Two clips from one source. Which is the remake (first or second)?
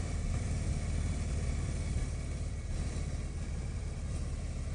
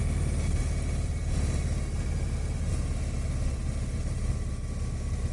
first